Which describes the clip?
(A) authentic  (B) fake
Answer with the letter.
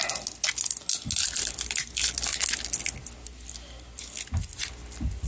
A